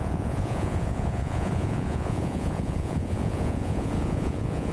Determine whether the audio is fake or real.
fake